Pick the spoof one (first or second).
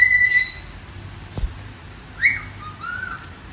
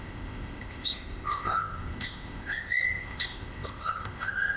second